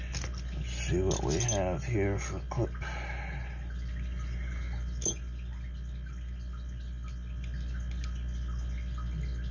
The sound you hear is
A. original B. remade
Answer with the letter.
A